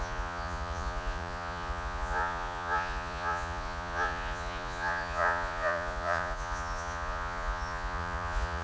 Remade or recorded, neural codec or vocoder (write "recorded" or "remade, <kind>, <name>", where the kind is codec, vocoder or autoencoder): remade, vocoder, Vocos